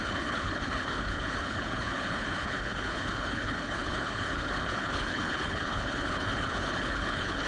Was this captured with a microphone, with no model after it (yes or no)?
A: no